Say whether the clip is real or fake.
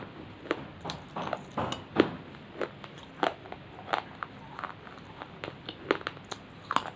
real